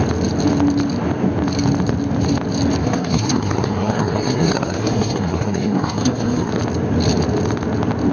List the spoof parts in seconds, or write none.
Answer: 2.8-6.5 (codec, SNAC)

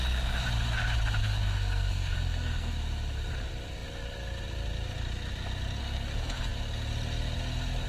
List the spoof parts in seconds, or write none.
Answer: 1.2-2.7 (codec, SNAC); 5.8-6.5

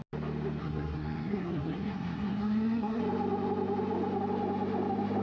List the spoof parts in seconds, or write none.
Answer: 0.6-3.0 (codec, SNAC)

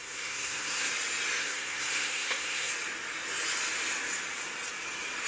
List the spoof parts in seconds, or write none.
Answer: 0.0-0.9 (codec, SNAC); 1.4-2.7